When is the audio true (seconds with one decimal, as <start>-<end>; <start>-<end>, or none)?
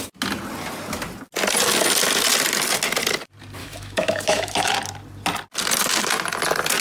0.0-3.6; 4.7-6.8